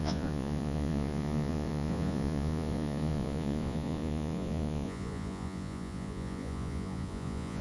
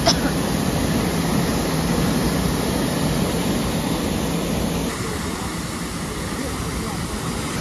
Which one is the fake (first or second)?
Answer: first